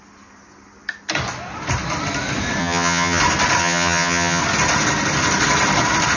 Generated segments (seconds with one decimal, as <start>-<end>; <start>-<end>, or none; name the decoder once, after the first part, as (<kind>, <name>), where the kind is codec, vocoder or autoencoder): 2.6-3.2 (vocoder, HiFi-GAN); 3.6-4.4